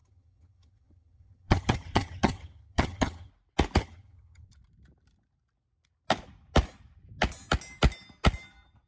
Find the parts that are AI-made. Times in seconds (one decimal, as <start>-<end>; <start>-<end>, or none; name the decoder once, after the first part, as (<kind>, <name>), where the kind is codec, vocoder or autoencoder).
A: 0.0-3.3 (vocoder, HiFi-GAN); 3.8-4.5